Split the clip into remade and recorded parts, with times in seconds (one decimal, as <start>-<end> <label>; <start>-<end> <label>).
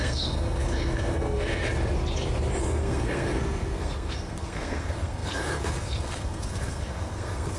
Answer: 0.0-1.6 remade; 1.6-2.6 recorded; 2.6-7.6 remade